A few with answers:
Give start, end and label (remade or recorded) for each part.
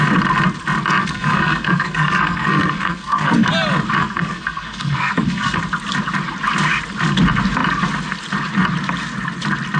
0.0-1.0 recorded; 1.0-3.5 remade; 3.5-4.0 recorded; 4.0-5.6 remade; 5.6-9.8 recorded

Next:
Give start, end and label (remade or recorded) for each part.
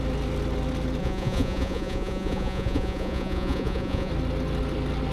0.0-1.0 recorded; 1.0-4.1 remade; 4.1-5.1 recorded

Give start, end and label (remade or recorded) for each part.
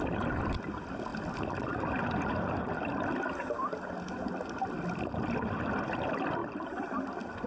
0.0-6.4 recorded; 6.4-7.5 remade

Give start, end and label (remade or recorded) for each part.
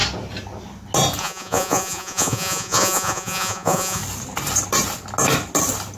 0.0-1.2 recorded; 1.2-4.0 remade; 4.0-6.0 recorded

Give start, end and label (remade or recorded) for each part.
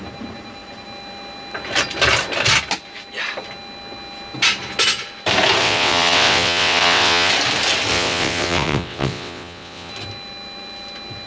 0.0-5.6 recorded; 5.6-7.3 remade; 7.3-7.9 recorded; 7.9-9.9 remade; 9.9-11.3 recorded